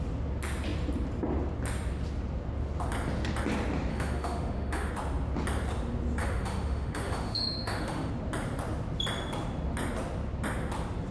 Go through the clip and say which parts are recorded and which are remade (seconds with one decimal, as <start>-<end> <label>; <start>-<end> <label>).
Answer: 0.0-3.9 recorded; 3.9-4.9 remade; 4.9-6.2 recorded; 6.2-8.1 remade; 8.1-11.1 recorded